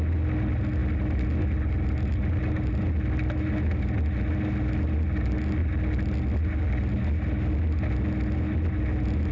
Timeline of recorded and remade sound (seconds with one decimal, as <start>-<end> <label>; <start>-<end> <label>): 0.0-9.3 recorded